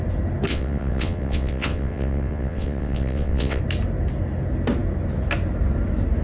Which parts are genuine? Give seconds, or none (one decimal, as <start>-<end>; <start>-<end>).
0.0-0.5; 3.6-6.2